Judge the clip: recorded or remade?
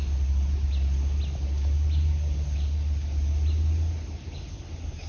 recorded